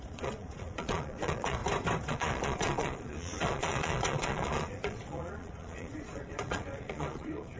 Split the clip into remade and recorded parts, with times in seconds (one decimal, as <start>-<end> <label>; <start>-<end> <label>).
0.0-1.6 remade; 1.6-2.1 recorded; 2.1-7.6 remade